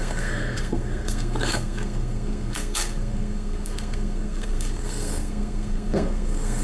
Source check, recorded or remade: remade